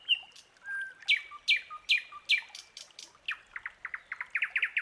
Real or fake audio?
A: real